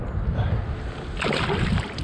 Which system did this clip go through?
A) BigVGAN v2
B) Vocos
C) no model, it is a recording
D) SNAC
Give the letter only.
C